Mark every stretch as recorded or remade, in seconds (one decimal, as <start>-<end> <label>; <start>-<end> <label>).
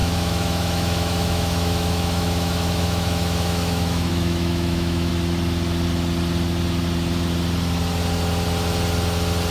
0.0-5.1 remade; 5.1-9.5 recorded